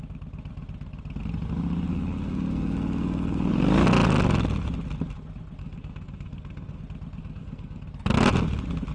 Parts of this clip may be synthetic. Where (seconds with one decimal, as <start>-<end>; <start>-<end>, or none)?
1.9-3.5; 5.6-6.8; 7.2-7.8